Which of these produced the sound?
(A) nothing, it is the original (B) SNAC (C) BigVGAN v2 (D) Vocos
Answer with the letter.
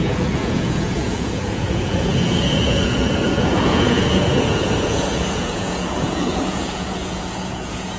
D